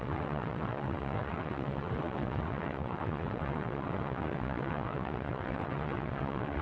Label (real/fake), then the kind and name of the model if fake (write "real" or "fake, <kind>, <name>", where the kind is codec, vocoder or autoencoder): fake, vocoder, WaveNeXt